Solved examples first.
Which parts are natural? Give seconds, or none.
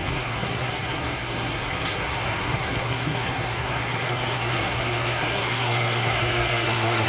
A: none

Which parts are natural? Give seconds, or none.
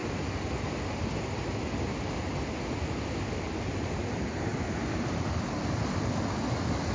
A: 0.0-4.1; 4.5-5.4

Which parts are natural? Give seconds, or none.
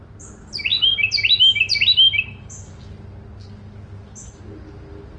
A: 0.0-5.2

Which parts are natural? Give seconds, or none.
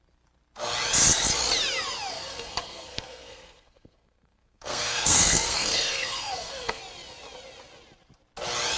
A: 0.0-2.1; 6.8-8.8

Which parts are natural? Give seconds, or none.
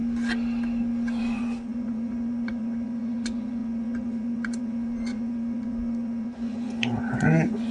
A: 0.0-1.2